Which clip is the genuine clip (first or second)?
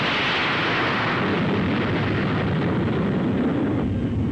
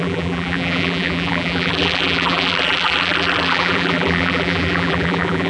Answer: first